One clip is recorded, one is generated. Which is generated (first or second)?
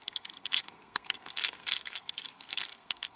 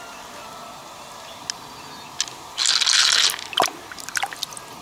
first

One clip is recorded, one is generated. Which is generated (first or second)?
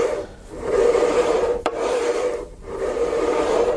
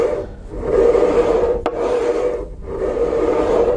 first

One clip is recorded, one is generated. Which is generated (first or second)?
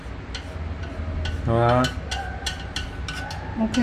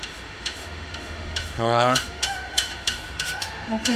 second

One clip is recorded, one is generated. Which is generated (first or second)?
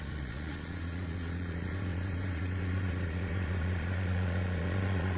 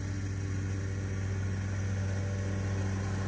first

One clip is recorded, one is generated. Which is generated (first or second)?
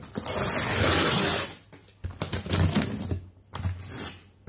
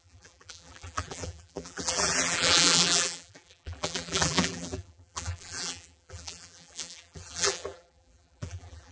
second